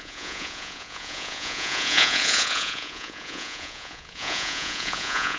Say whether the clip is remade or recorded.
remade